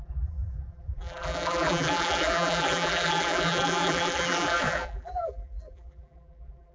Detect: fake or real fake